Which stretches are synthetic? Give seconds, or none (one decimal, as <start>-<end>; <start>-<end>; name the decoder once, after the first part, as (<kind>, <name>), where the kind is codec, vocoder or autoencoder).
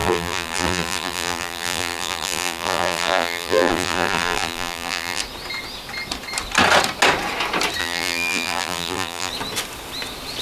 0.0-5.2 (vocoder, BigVGAN v2); 7.8-9.3